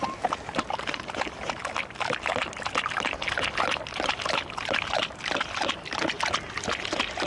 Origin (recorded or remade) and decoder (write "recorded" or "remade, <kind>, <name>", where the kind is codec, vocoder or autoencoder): recorded